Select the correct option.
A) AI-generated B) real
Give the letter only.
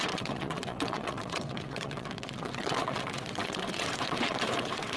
A